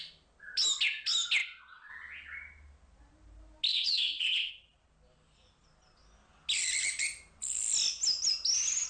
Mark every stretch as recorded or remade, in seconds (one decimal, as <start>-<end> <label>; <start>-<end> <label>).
0.0-3.7 recorded; 3.7-4.5 remade; 4.5-8.9 recorded